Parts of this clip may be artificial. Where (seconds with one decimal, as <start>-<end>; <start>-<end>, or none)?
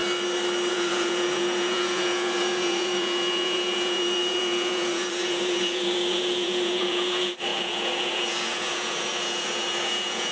0.7-10.3